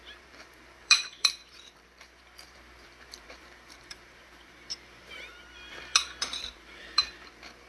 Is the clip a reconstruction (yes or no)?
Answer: yes